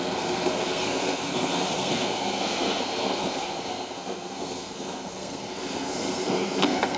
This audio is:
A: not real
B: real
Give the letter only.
A